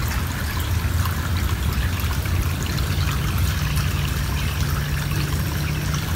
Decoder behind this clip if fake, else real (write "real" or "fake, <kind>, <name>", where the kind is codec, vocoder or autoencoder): real